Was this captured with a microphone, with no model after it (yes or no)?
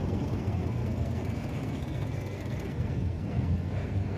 no